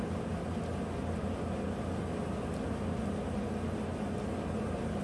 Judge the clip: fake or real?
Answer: real